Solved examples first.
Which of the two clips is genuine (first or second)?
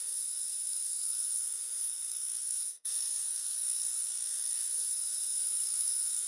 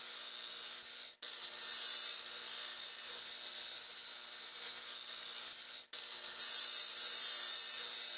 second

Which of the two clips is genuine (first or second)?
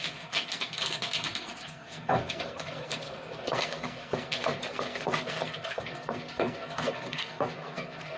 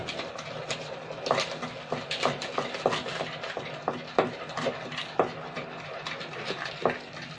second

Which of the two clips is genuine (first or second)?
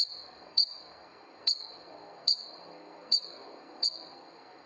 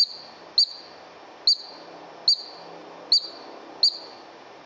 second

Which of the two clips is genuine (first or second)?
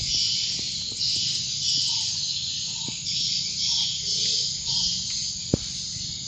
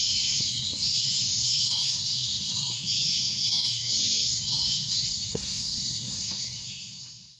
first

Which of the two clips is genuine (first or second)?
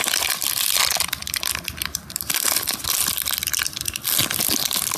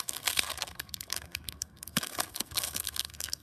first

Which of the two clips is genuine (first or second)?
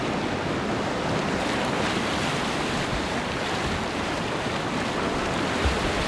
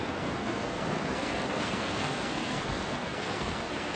first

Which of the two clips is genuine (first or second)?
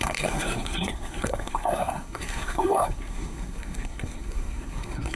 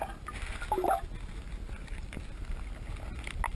second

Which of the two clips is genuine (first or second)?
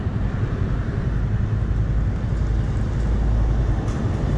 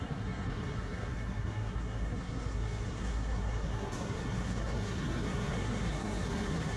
first